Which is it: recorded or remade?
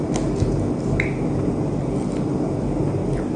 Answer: recorded